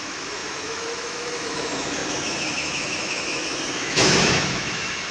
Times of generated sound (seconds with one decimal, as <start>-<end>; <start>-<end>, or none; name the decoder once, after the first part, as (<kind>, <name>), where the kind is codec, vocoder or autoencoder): 0.0-5.1 (autoencoder, DAC-VAE)